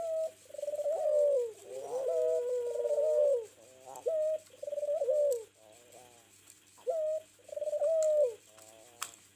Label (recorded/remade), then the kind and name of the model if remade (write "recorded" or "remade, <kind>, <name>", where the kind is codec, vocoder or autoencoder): recorded